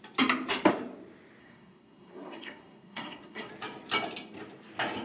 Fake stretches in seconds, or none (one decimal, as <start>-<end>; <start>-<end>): 1.4-3.5